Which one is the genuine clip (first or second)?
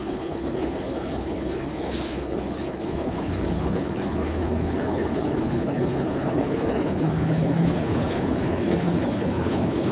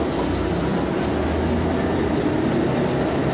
second